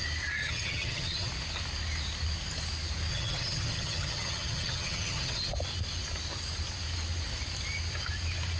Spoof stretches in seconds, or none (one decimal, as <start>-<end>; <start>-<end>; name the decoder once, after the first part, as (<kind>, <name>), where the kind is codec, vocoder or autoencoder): 0.4-1.3 (vocoder, HiFi-GAN); 3.1-5.5